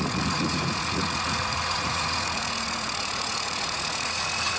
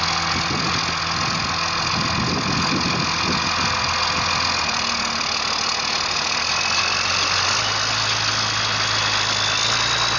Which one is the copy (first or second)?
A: first